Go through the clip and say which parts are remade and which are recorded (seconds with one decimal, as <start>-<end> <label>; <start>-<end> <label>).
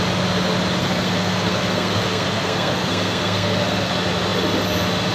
0.0-0.8 recorded; 0.8-3.9 remade; 3.9-5.1 recorded